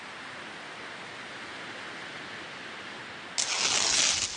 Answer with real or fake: real